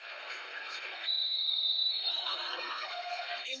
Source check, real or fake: fake